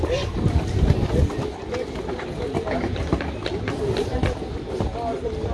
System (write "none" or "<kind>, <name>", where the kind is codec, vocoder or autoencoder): none